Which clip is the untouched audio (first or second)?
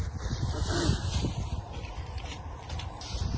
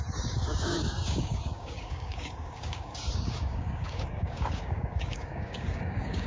first